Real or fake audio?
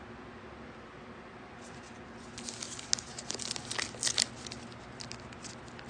real